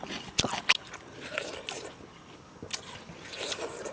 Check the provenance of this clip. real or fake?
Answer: real